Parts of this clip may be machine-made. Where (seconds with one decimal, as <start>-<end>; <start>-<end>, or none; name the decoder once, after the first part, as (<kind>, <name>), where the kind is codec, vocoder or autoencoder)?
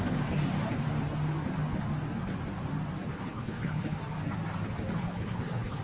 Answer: 3.1-4.0 (codec, HILCodec); 5.0-5.8